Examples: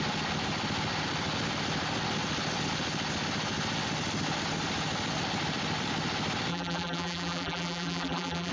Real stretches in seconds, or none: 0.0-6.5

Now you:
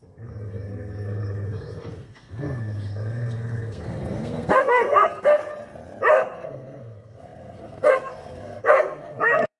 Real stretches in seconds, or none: 5.4-6.1

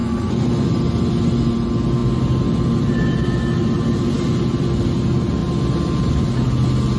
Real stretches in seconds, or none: 0.7-7.0